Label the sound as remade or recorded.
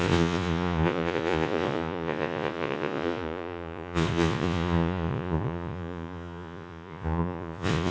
remade